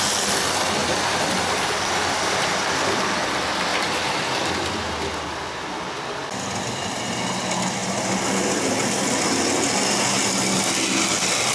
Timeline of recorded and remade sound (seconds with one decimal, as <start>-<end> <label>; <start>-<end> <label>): 0.0-0.8 recorded; 0.8-3.1 remade; 3.1-3.7 recorded; 3.7-4.4 remade; 4.4-6.2 recorded; 6.2-7.1 remade; 7.1-11.5 recorded